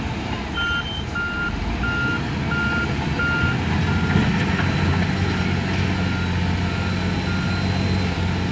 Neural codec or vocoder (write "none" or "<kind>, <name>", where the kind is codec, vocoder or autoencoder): none